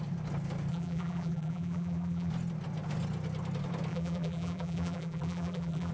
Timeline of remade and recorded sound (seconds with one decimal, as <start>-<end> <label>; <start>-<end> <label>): 0.0-0.7 recorded; 0.7-2.3 remade; 2.3-3.9 recorded; 3.9-5.9 remade